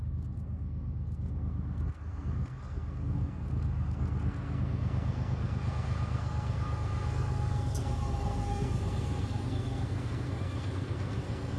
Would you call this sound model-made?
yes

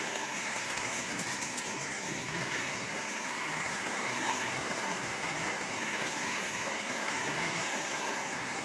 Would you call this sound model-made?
yes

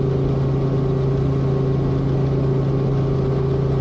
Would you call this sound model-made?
no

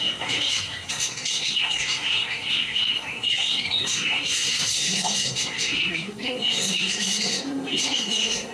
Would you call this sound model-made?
yes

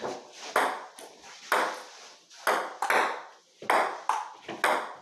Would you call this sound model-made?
no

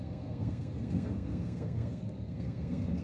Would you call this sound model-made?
yes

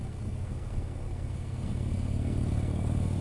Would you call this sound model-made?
yes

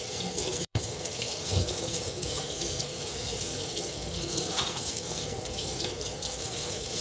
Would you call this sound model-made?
yes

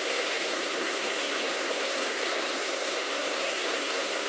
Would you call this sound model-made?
yes